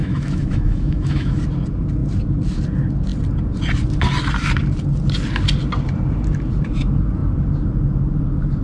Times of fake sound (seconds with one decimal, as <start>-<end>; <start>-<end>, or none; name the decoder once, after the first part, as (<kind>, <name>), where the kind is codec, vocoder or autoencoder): 0.0-1.4 (autoencoder, DAC-VAE)